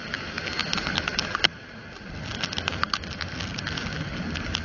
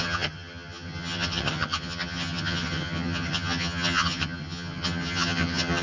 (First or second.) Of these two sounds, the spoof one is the second